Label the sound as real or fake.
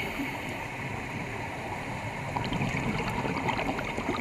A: fake